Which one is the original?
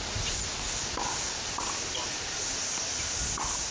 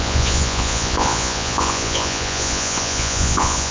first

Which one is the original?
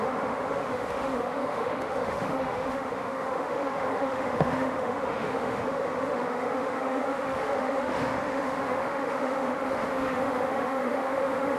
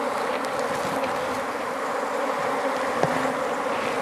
second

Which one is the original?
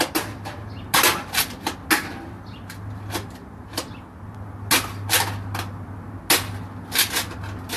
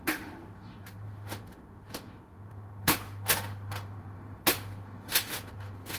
first